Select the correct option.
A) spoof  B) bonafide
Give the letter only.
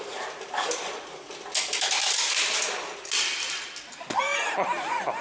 B